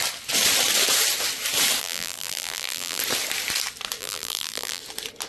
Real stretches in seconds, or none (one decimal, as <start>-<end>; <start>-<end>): 0.0-1.8; 3.0-4.0; 4.8-5.3